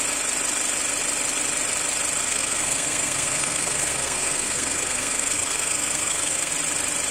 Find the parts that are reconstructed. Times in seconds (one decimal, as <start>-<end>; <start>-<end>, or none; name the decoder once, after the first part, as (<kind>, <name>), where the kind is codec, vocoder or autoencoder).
2.2-6.5 (codec, SNAC)